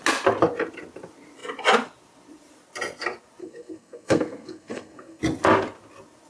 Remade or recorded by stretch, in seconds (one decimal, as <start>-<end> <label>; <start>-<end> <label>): 0.0-3.4 recorded; 3.4-5.2 remade; 5.2-6.3 recorded